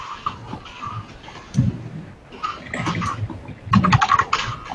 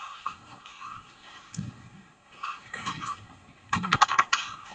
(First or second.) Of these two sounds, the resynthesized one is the second